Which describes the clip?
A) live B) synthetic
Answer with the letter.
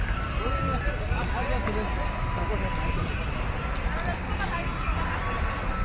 A